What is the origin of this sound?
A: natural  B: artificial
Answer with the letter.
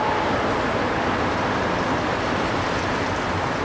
A